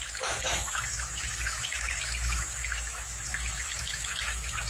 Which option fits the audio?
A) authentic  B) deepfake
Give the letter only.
B